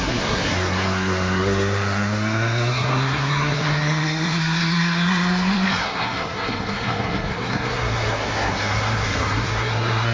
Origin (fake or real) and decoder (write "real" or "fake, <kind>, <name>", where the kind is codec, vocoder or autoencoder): fake, codec, SNAC